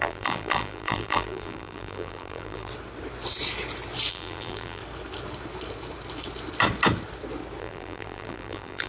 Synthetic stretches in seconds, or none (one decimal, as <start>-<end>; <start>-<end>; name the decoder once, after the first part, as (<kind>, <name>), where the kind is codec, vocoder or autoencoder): 0.0-2.7 (vocoder, BigVGAN v2); 4.1-4.8; 7.6-8.9